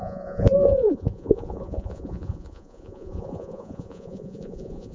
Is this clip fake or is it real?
fake